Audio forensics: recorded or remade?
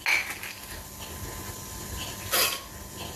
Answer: recorded